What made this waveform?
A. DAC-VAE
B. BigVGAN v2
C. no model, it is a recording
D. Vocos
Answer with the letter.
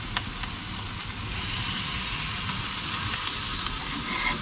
C